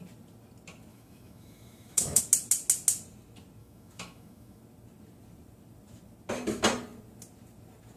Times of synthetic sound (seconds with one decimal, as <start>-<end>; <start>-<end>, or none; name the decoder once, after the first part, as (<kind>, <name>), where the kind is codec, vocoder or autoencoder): 0.9-2.2 (autoencoder, DAC-VAE); 3.6-4.6